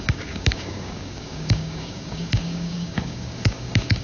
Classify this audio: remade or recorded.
remade